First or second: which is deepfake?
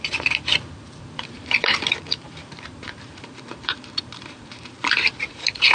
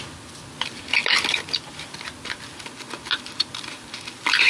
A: first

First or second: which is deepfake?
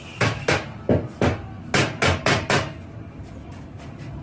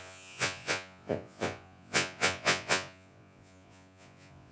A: second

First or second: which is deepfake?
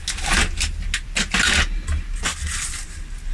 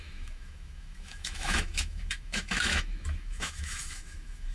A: second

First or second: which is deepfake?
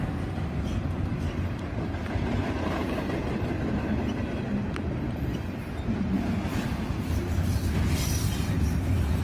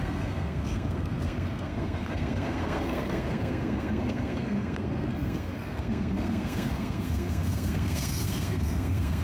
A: second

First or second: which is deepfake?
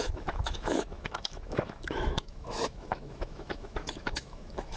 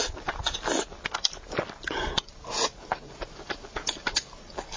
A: first